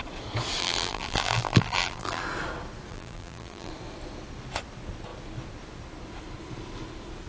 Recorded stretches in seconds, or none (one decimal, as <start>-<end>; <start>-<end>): 0.0-0.6; 2.2-2.9; 3.7-7.3

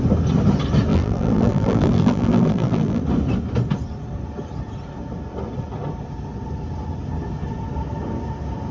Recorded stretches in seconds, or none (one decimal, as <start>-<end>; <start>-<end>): 0.0-0.9; 3.0-8.7

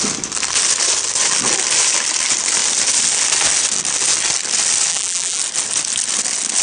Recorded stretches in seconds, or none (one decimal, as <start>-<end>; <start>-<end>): 0.0-4.9; 5.4-6.6

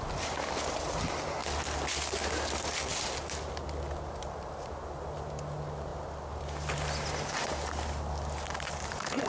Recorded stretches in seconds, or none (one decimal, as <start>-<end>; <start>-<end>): 0.0-9.3

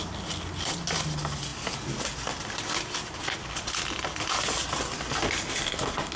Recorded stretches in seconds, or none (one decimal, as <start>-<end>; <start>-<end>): 0.0-6.2

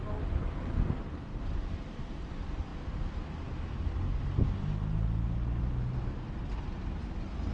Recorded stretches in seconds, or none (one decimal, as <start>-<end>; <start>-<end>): 0.0-1.3; 2.3-7.5